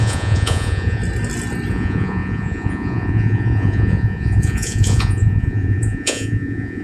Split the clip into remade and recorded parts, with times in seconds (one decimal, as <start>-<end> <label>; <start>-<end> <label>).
0.0-1.0 remade; 1.0-1.7 recorded; 1.7-6.8 remade